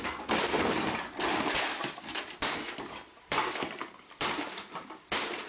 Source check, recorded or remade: recorded